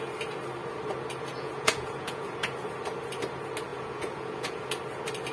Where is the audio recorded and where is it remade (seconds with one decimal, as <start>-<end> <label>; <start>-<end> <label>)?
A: 0.0-1.3 recorded; 1.3-2.5 remade; 2.5-3.7 recorded; 3.7-4.6 remade; 4.6-5.3 recorded